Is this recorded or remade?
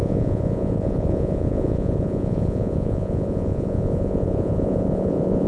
remade